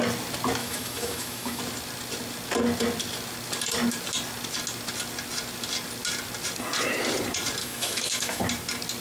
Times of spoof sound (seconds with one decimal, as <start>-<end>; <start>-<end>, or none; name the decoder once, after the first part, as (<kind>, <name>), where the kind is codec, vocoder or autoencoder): 0.6-1.6 (autoencoder, DAC-VAE); 7.6-8.4